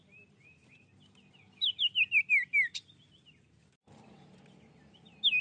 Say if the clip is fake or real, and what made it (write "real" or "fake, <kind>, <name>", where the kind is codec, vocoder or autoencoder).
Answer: real